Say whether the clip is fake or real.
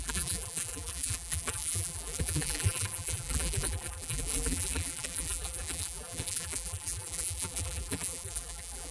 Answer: fake